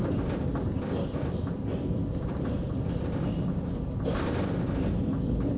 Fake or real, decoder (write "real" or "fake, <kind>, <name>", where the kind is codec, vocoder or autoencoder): fake, vocoder, BigVGAN v2